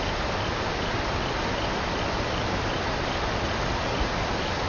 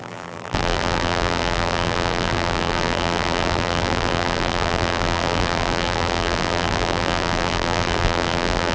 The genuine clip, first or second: first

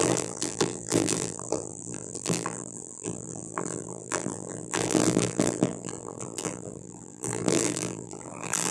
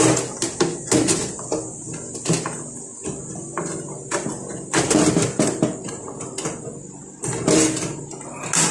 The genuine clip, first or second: second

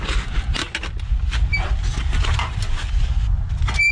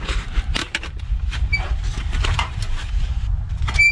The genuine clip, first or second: first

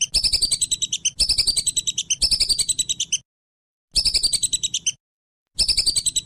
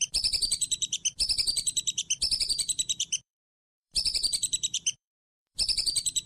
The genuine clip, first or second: first